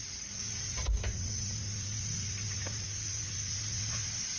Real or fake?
real